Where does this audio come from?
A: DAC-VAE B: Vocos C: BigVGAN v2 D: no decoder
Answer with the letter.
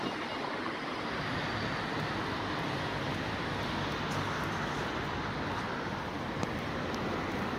D